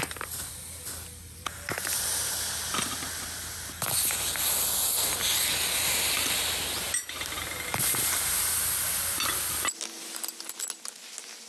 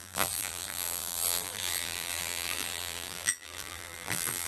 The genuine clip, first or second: first